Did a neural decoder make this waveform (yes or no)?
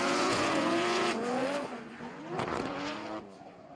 yes